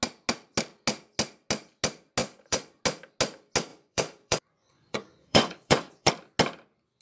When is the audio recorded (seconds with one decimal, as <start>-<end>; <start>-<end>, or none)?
0.0-2.2; 2.8-3.7; 6.1-7.0